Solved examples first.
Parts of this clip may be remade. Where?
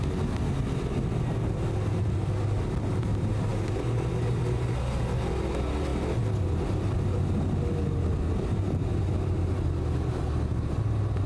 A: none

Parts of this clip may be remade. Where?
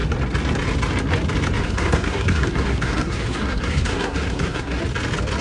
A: 1.6-4.8 (codec, SNAC)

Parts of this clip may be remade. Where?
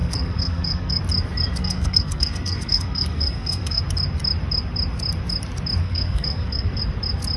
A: 0.0-1.0 (codec, SNAC); 1.6-3.8; 5.8-6.8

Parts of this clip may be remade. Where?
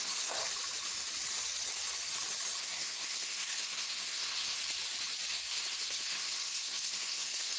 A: 0.0-0.4 (codec, SNAC); 2.6-4.6; 5.3-7.6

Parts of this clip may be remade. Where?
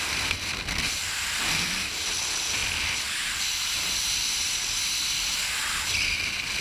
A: none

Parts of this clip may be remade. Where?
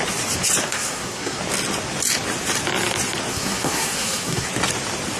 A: 0.6-1.4 (codec, SNAC); 3.3-4.5